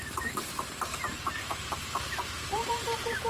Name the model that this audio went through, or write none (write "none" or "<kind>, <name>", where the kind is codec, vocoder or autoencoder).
vocoder, BigVGAN v2